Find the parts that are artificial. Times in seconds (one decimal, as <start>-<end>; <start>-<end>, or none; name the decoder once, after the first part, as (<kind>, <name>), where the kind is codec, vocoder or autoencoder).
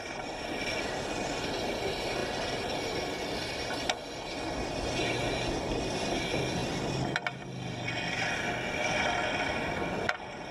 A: none